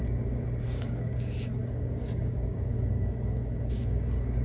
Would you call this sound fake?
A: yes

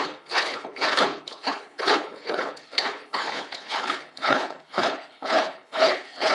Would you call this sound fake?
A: yes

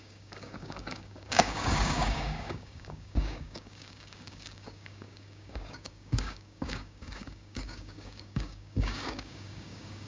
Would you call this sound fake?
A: yes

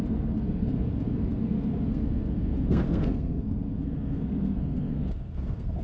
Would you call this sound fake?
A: yes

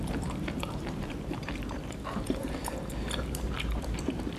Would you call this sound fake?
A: yes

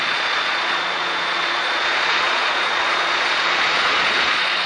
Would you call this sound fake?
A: yes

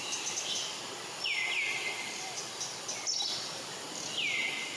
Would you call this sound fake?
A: no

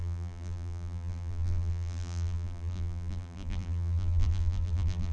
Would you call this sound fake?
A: yes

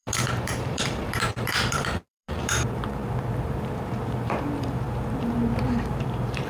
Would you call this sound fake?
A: yes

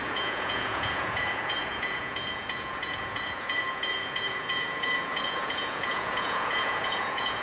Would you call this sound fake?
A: yes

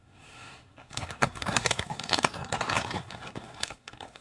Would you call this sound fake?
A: yes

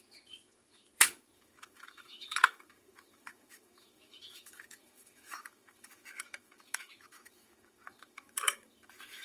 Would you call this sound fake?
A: yes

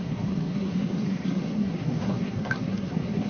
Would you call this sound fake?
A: yes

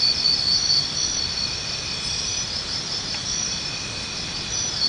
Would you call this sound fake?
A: no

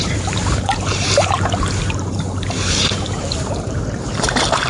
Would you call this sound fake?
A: yes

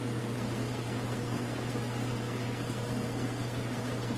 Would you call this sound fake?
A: yes